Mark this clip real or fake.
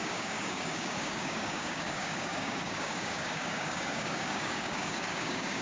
fake